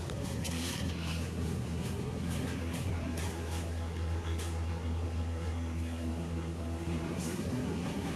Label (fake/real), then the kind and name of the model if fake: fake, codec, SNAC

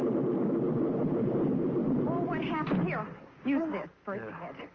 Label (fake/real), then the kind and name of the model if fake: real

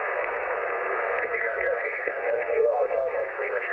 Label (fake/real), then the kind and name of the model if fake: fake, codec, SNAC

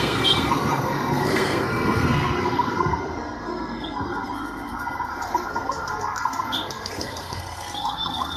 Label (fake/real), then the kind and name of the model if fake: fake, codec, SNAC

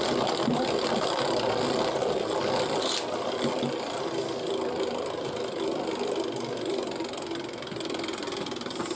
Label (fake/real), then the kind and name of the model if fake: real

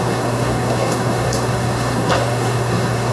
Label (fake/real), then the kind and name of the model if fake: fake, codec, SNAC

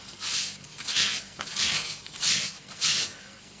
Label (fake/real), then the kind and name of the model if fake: fake, codec, SNAC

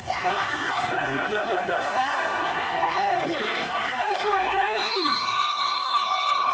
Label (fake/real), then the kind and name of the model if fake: fake, codec, SNAC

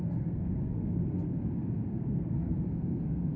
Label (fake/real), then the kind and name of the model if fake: fake, codec, SNAC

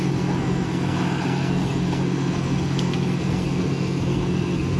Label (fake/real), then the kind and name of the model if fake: fake, codec, SNAC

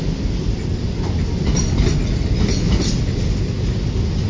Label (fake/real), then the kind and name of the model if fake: real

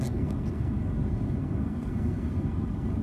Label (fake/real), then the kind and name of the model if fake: fake, codec, SNAC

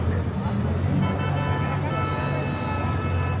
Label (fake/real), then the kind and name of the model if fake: real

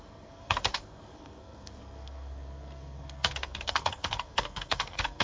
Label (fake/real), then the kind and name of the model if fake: fake, codec, SNAC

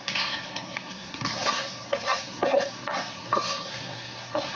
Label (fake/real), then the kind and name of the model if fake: fake, codec, SNAC